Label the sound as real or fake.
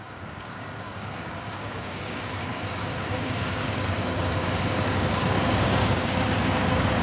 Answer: fake